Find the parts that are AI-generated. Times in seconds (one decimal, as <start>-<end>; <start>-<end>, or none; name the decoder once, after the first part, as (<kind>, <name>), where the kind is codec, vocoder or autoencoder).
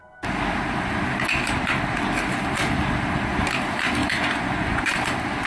4.0-4.9 (vocoder, Vocos)